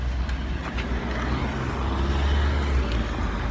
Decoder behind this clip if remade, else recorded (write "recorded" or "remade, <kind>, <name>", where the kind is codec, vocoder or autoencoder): recorded